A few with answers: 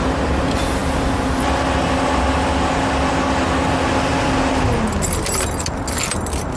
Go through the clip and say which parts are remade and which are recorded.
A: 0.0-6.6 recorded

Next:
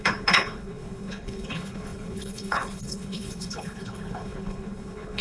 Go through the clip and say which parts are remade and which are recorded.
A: 0.0-5.2 remade

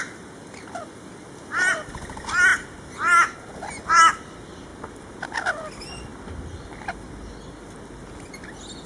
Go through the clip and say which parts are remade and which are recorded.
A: 0.0-8.9 recorded

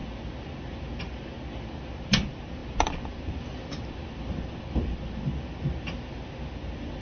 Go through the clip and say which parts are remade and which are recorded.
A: 0.0-7.0 recorded

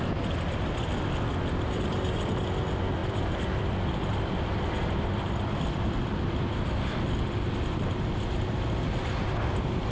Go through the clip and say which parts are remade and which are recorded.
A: 0.0-3.0 recorded; 3.0-7.5 remade; 7.5-9.9 recorded

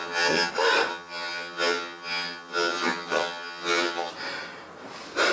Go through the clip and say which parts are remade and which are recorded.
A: 0.0-0.5 remade; 0.5-0.9 recorded; 0.9-4.1 remade; 4.1-5.3 recorded

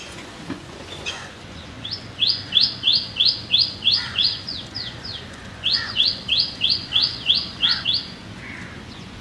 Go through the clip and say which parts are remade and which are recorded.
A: 0.0-9.2 remade